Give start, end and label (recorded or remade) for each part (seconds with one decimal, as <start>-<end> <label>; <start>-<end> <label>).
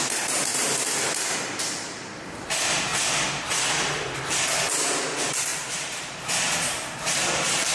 0.0-0.5 recorded; 0.5-1.3 remade; 1.3-5.5 recorded; 5.5-7.7 remade